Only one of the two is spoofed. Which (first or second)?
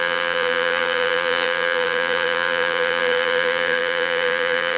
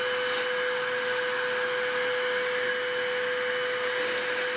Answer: first